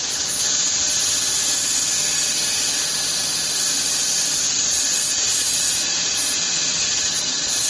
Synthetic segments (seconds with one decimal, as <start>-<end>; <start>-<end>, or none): 0.0-1.0; 4.4-7.7